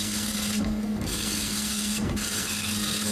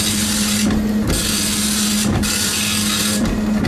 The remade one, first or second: first